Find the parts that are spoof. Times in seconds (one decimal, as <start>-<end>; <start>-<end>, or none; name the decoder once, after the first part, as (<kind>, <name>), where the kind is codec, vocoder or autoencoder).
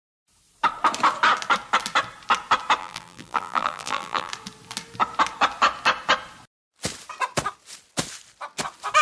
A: 2.8-4.3 (vocoder, BigVGAN v2)